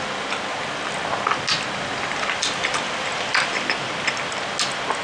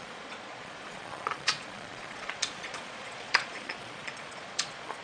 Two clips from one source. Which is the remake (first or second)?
second